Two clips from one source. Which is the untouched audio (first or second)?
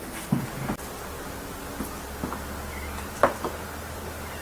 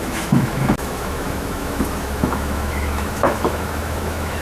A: first